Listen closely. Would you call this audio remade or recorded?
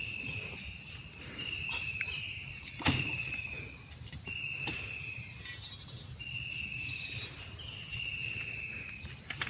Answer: recorded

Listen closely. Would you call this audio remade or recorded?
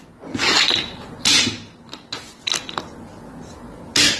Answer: recorded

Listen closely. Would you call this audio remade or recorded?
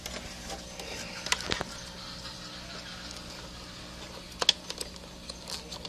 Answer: recorded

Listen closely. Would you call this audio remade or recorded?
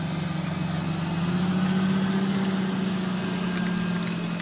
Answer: recorded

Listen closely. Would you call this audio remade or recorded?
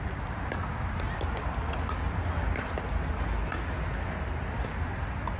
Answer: recorded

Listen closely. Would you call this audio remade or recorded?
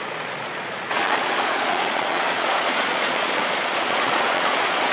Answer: remade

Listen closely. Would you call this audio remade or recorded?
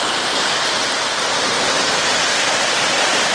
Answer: recorded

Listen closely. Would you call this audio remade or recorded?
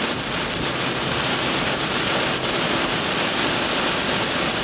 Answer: recorded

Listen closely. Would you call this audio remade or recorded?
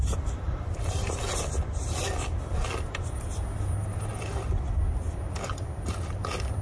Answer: recorded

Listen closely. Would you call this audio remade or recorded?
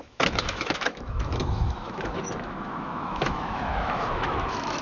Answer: remade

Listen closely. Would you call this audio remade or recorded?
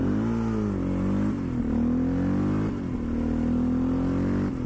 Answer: recorded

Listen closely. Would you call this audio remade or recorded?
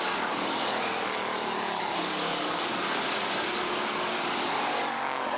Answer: remade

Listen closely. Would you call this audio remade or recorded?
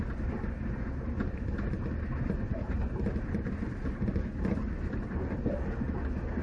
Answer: recorded